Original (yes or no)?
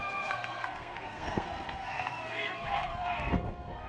no